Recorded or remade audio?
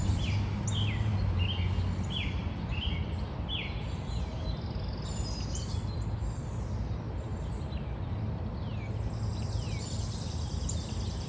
recorded